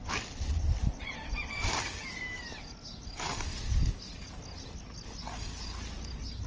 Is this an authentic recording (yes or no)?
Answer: yes